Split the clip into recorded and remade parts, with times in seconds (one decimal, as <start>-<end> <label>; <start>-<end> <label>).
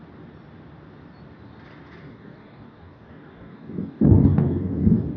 0.0-2.0 recorded; 2.0-5.2 remade